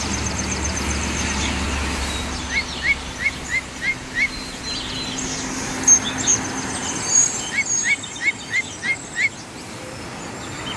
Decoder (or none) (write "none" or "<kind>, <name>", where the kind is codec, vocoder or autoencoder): vocoder, BigVGAN v2